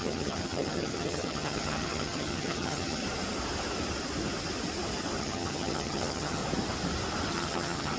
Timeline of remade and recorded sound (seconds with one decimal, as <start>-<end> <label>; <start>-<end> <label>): 0.0-3.0 remade; 3.0-5.2 recorded; 5.2-6.4 remade; 6.4-7.3 recorded; 7.3-8.0 remade